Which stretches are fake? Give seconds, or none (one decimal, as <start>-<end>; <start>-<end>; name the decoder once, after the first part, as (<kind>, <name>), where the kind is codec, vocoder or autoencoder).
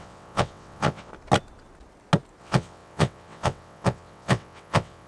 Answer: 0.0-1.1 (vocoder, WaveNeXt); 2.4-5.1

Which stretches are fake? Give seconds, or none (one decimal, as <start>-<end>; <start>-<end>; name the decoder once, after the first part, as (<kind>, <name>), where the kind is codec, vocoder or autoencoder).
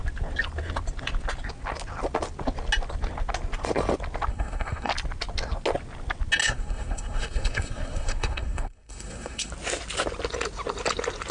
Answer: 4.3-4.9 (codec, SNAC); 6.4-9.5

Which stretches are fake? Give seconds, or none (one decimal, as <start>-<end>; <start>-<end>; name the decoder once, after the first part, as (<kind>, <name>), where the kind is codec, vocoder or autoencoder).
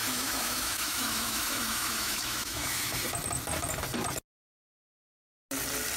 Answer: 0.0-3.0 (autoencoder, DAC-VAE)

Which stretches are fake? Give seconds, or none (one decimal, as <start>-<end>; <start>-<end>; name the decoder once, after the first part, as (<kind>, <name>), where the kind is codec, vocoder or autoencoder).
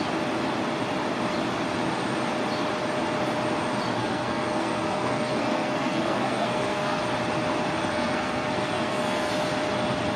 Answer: 4.0-7.0 (codec, SNAC); 7.8-9.3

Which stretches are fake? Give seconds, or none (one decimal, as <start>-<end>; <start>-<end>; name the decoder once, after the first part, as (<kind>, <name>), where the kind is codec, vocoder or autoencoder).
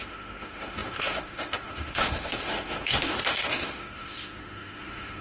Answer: 0.0-5.2 (autoencoder, DAC-VAE)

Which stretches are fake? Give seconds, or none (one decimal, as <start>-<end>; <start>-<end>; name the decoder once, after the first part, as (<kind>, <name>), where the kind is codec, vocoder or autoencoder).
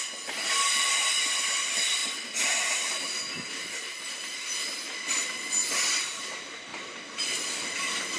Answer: 2.0-2.9 (vocoder, BigVGAN v2); 6.7-8.2